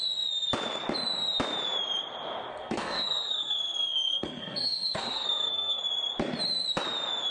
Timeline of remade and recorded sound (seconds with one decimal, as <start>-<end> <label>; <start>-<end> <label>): 0.0-2.5 recorded; 2.5-5.8 remade; 5.8-7.3 recorded

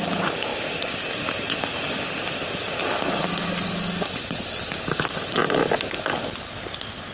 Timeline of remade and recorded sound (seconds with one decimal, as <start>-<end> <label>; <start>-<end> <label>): 0.0-7.1 recorded

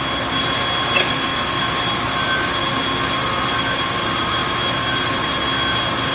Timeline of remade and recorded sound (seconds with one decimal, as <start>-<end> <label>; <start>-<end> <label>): 0.0-1.0 recorded; 1.0-1.6 remade; 1.6-6.1 recorded

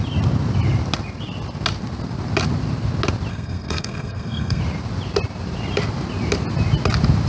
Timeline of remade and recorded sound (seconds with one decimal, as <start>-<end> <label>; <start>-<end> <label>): 0.0-3.3 recorded; 3.3-4.6 remade; 4.6-7.3 recorded

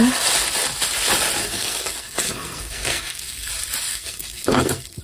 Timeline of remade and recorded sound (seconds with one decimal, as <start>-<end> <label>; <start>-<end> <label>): 0.0-1.4 recorded; 1.4-3.5 remade; 3.5-3.9 recorded; 3.9-5.0 remade

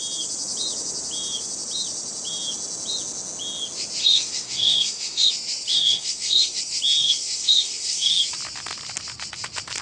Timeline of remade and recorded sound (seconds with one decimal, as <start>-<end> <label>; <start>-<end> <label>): 0.0-4.0 recorded; 4.0-5.3 remade; 5.3-5.7 recorded; 5.7-6.6 remade; 6.6-7.0 recorded; 7.0-8.2 remade; 8.2-9.8 recorded

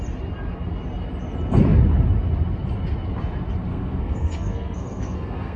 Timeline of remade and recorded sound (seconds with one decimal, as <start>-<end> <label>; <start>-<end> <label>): 0.0-3.7 recorded; 3.7-5.6 remade